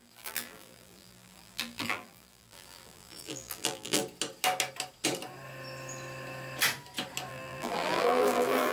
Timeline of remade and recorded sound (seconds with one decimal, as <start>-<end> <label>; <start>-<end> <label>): 0.0-4.0 remade; 4.0-7.3 recorded; 7.3-8.7 remade